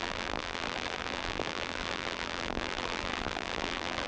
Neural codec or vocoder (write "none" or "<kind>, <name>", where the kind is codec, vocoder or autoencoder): vocoder, BigVGAN v2